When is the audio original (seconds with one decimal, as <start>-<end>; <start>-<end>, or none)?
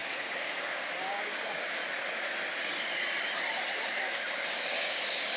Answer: 1.8-3.9